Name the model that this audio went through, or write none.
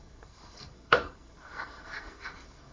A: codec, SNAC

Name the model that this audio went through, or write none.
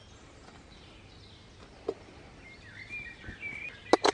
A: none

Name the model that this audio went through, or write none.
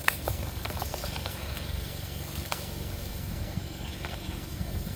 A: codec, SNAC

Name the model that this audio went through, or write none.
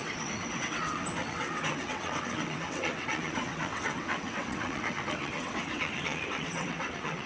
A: vocoder, WaveNeXt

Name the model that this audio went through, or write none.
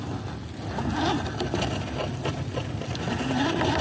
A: none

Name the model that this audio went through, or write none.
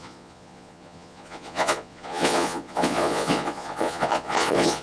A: vocoder, Vocos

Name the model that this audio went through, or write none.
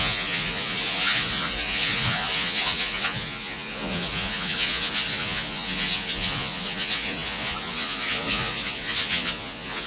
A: vocoder, Vocos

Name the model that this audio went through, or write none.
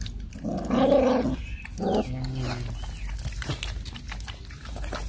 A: none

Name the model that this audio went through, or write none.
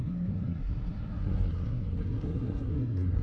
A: codec, SNAC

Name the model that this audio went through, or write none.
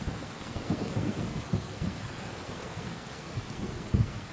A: codec, SNAC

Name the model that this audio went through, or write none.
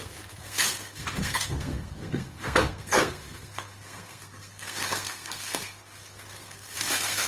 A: codec, SNAC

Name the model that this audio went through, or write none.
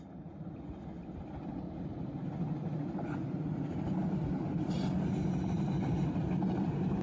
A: none